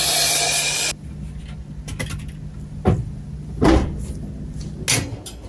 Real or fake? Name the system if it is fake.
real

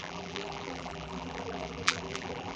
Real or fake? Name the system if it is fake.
fake, vocoder, BigVGAN v2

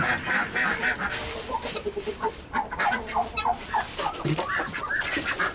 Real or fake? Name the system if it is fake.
fake, vocoder, BigVGAN v2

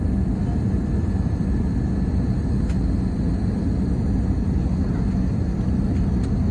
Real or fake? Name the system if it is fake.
real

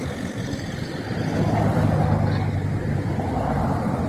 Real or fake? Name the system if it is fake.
real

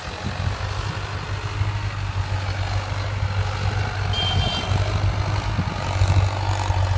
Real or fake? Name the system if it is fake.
real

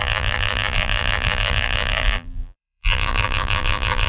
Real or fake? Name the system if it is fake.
fake, vocoder, BigVGAN v2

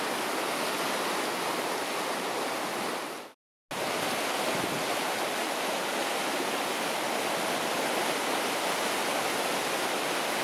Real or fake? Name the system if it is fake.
real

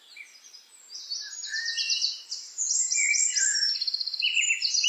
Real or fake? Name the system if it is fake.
fake, vocoder, BigVGAN v2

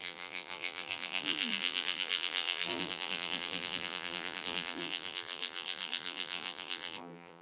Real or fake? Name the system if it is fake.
fake, vocoder, BigVGAN v2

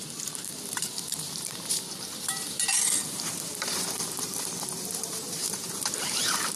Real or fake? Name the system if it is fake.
fake, vocoder, BigVGAN v2